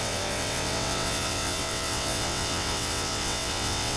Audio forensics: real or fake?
fake